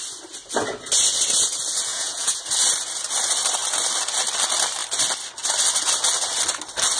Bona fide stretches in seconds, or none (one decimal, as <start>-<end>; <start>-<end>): 0.0-1.9; 2.4-7.0

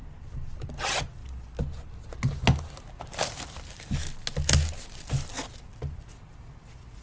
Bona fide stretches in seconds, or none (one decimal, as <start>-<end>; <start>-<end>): 0.0-7.0

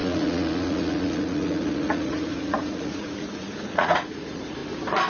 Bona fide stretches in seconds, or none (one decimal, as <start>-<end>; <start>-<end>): 4.6-5.1

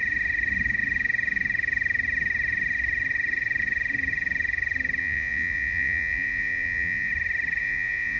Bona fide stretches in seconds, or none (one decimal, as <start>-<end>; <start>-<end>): 0.0-5.0; 7.1-7.6

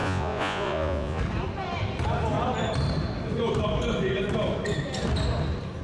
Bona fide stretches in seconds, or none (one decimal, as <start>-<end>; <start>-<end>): 1.2-5.8

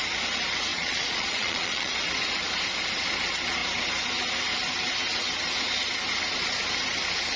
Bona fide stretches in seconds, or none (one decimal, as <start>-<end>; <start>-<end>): 0.0-0.7; 2.0-7.4

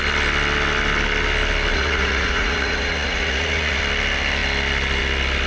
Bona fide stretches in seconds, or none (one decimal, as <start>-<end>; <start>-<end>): 0.0-1.7; 3.8-5.5